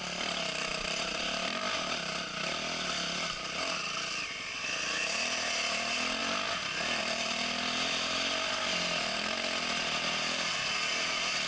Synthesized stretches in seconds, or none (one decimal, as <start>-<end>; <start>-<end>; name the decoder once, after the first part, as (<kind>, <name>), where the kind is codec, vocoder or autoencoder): 0.0-6.2 (vocoder, BigVGAN v2); 7.0-11.5